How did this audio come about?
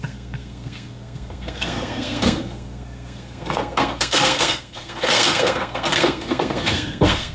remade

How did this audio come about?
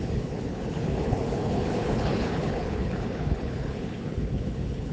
remade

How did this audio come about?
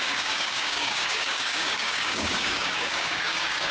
remade